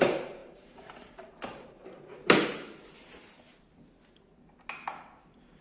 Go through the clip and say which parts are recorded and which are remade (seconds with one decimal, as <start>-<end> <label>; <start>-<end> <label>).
0.0-1.8 remade; 1.8-5.6 recorded